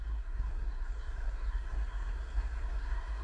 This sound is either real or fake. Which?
fake